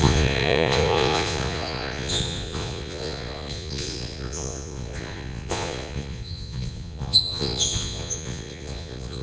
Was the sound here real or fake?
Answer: fake